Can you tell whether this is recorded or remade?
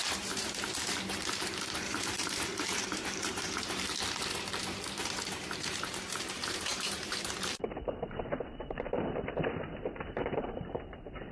remade